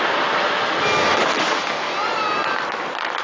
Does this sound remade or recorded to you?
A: recorded